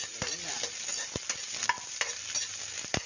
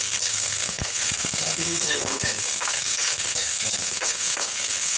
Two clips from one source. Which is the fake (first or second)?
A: second